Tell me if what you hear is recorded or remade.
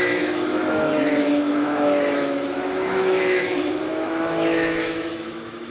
remade